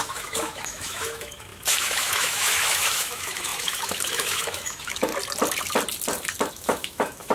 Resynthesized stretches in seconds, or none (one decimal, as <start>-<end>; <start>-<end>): 0.0-5.1; 6.5-7.3